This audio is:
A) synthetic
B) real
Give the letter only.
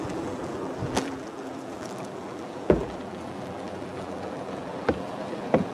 A